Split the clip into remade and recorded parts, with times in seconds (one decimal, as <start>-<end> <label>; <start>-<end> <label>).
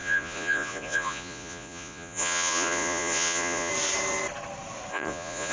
0.0-3.7 remade; 3.7-4.9 recorded; 4.9-5.5 remade